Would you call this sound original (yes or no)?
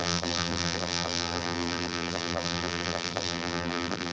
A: no